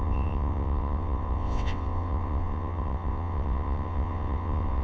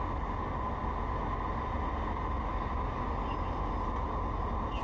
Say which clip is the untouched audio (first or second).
second